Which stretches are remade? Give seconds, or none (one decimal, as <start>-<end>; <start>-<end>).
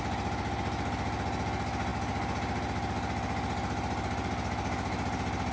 none